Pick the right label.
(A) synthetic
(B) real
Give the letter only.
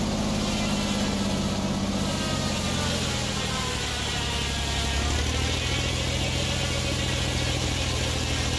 B